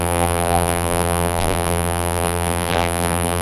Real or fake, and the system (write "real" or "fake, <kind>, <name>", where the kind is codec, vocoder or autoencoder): fake, vocoder, BigVGAN v2